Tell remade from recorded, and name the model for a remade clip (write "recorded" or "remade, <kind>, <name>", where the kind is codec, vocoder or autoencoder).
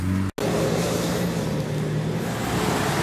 recorded